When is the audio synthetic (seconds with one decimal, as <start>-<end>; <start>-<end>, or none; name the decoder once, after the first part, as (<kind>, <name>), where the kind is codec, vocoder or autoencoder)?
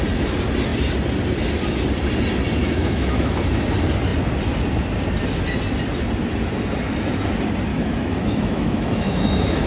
2.6-3.4 (autoencoder, DAC-VAE); 7.7-9.7